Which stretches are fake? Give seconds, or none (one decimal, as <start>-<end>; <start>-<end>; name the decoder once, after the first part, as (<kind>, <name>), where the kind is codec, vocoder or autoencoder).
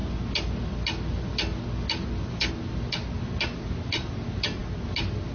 none